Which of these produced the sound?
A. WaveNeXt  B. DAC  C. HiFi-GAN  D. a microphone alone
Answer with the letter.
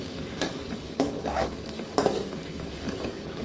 B